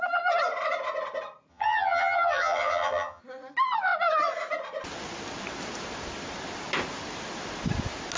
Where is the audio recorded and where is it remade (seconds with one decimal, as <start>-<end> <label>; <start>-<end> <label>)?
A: 0.0-1.5 recorded; 1.5-3.2 remade; 3.2-8.2 recorded